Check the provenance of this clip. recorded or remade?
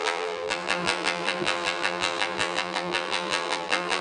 remade